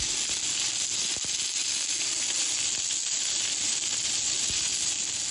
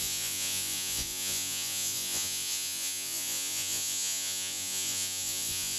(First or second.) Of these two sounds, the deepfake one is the second